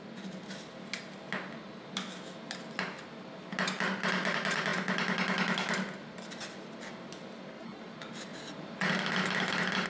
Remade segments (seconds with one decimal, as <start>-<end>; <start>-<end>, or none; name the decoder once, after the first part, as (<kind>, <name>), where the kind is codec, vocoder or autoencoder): none